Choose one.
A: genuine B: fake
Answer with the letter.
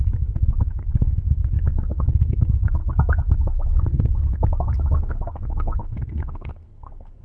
B